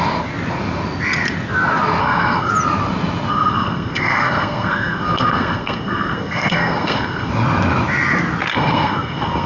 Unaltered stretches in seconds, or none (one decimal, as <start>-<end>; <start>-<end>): 0.0-2.0; 2.5-3.3; 7.3-8.5